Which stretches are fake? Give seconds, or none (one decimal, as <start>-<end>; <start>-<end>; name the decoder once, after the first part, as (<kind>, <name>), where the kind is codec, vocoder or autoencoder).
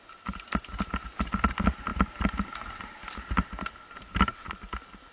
none